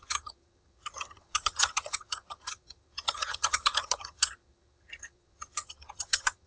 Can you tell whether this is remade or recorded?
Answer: remade